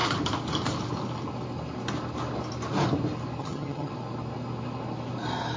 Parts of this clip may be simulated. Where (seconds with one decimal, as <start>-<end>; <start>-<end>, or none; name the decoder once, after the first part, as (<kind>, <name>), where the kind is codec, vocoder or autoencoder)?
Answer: 3.4-3.9 (vocoder, HiFi-GAN)